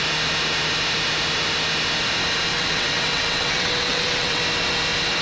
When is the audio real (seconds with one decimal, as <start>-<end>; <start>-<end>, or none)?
0.0-2.5; 4.4-5.2